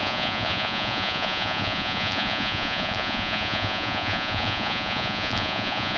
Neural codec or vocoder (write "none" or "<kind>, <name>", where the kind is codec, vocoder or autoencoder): vocoder, Vocos